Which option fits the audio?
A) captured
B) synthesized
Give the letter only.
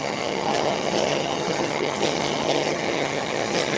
B